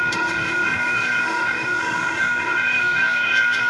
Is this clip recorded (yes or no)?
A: no